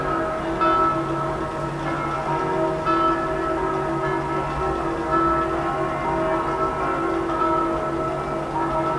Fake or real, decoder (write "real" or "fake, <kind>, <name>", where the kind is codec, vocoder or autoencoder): real